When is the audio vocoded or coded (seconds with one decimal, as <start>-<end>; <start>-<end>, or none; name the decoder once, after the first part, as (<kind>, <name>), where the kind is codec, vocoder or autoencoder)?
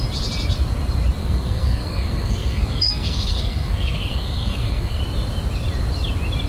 1.2-5.0 (codec, SNAC)